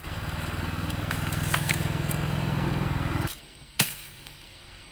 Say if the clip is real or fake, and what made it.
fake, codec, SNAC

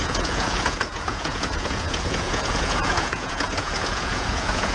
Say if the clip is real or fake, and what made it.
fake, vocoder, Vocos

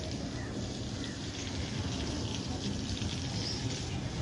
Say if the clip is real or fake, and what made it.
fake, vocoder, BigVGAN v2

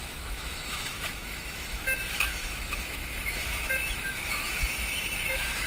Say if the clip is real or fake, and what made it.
fake, autoencoder, DAC-VAE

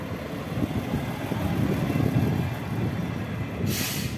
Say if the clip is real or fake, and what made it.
real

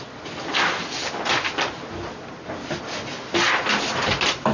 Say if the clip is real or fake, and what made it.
real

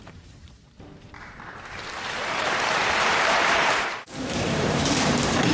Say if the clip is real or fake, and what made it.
fake, vocoder, BigVGAN v2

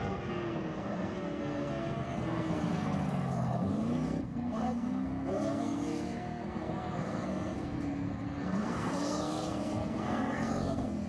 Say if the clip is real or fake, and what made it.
fake, codec, SNAC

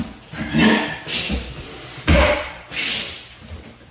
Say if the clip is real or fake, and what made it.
real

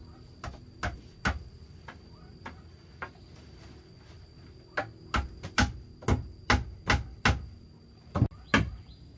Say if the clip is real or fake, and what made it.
real